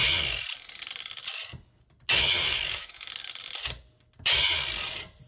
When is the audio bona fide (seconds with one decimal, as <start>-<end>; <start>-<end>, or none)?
0.0-2.4; 3.1-5.3